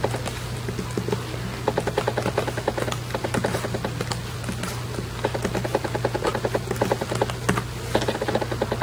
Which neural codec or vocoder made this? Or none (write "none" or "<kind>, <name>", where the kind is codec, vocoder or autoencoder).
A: none